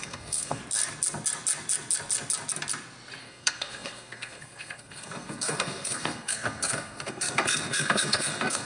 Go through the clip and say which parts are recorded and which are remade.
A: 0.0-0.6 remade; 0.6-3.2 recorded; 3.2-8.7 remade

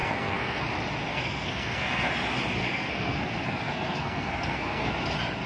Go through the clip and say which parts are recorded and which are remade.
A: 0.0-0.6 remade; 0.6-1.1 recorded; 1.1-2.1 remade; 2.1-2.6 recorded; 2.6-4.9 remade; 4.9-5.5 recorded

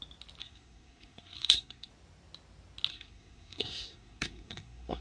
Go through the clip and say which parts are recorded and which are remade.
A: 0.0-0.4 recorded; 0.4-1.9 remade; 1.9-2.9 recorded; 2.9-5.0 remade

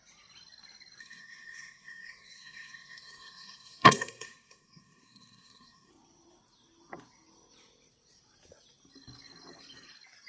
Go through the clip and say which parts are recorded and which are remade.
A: 0.0-1.0 recorded; 1.0-5.9 remade; 5.9-10.3 recorded